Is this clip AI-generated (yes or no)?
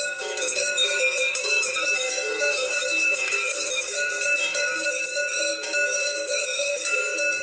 yes